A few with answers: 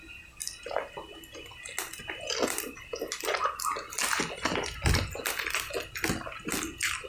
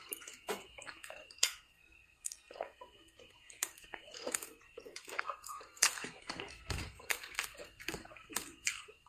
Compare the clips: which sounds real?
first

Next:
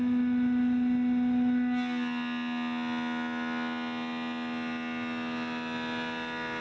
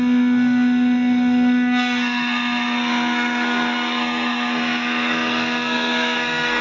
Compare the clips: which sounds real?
first